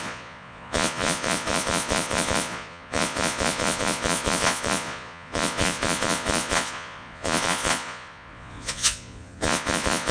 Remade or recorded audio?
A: remade